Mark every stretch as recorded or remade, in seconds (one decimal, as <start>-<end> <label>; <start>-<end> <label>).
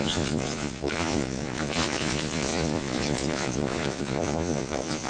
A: 0.0-5.1 remade